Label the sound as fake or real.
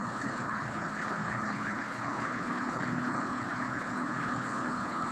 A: fake